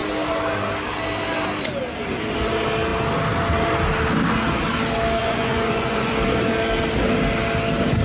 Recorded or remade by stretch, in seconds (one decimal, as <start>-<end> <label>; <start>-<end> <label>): 0.0-5.2 recorded; 5.2-6.1 remade; 6.1-8.0 recorded